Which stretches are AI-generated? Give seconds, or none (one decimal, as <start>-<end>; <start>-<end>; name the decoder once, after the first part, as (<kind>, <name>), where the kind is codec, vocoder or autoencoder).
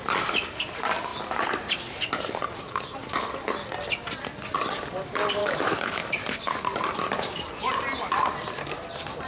5.4-6.1 (autoencoder, DAC-VAE)